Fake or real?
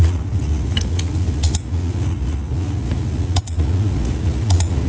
fake